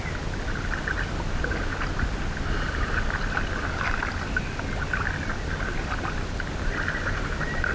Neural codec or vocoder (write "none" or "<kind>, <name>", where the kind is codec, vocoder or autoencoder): none